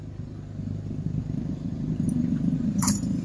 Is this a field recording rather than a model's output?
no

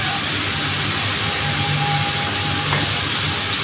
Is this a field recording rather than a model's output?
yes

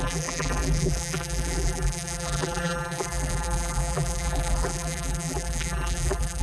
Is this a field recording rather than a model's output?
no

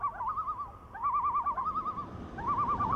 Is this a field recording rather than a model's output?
yes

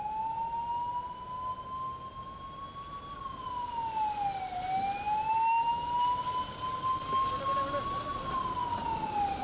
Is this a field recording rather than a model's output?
yes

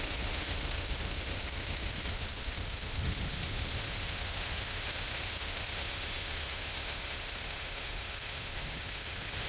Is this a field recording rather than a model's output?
no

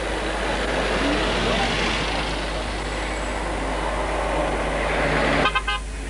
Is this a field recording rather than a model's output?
yes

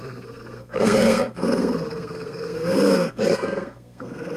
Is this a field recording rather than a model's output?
no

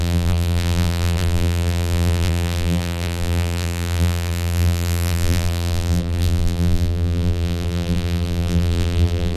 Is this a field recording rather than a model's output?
no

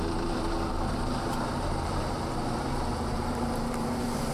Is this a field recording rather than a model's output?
no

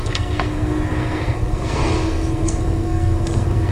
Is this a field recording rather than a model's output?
no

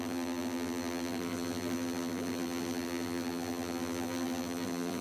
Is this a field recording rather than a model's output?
no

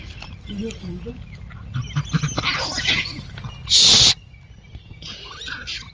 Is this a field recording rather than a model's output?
yes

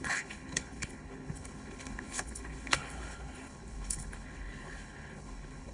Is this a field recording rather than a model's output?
no